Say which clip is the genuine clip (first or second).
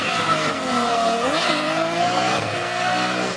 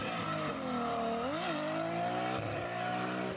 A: second